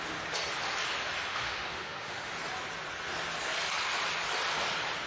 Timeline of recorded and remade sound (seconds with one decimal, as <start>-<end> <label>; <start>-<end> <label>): 0.0-1.3 recorded; 1.3-2.3 remade; 2.3-5.1 recorded